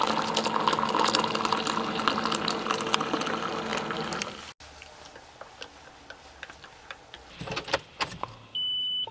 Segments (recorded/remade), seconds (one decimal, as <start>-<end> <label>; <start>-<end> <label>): 0.0-9.1 recorded